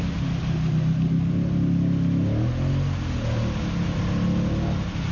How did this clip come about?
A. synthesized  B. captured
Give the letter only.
B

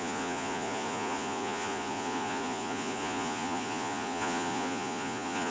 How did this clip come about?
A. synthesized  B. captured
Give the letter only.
A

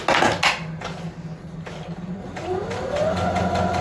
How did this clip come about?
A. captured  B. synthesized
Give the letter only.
A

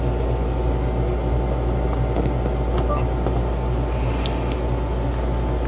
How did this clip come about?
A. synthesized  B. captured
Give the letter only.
B